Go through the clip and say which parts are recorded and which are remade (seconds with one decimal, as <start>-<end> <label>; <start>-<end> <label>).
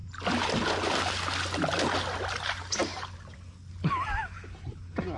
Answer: 0.0-5.2 recorded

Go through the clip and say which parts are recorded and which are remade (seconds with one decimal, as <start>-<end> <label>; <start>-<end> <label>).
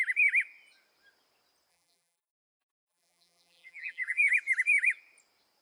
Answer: 0.0-1.7 recorded; 1.7-4.3 remade; 4.3-5.6 recorded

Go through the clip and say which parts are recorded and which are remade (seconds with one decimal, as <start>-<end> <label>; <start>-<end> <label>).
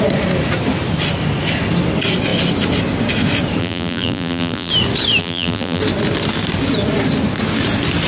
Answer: 0.0-3.6 recorded; 3.6-4.7 remade; 4.7-5.2 recorded; 5.2-5.8 remade; 5.8-8.1 recorded